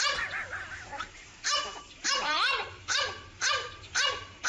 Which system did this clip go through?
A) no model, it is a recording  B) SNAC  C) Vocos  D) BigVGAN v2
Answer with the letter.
D